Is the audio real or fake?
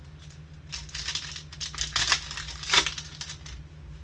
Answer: real